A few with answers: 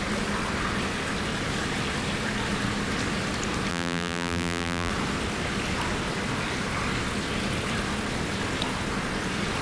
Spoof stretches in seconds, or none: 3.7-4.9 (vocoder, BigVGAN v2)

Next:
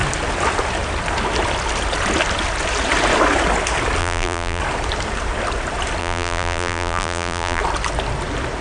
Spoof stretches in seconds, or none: 4.0-4.6 (vocoder, BigVGAN v2); 6.0-7.6

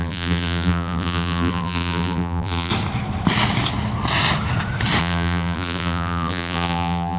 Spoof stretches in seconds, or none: 0.0-2.7 (vocoder, BigVGAN v2); 5.0-7.2

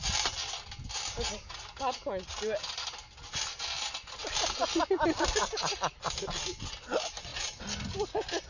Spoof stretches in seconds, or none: none

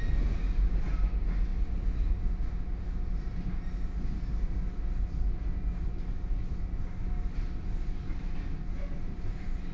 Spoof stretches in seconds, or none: none

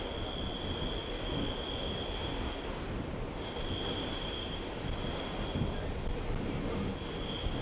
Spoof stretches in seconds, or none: 2.2-5.0 (vocoder, BigVGAN v2)